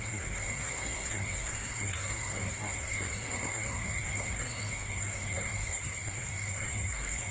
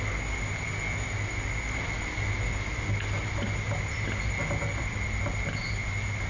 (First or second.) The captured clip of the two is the second